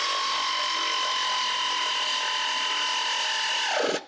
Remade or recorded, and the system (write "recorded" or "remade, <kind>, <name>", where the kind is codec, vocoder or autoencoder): recorded